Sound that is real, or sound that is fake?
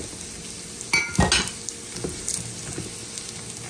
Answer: real